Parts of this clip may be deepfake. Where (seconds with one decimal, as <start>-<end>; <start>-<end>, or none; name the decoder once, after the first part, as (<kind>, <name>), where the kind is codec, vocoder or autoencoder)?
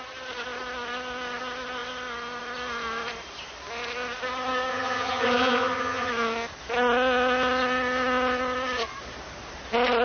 4.7-6.1 (vocoder, HiFi-GAN)